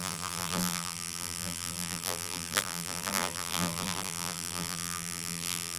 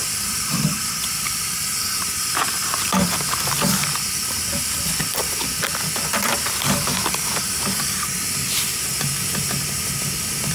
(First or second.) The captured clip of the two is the second